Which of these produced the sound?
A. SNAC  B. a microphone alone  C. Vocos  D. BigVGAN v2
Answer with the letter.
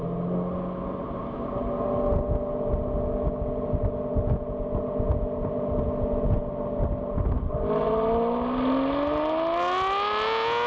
B